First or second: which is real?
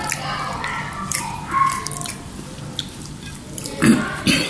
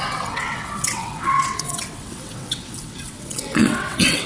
first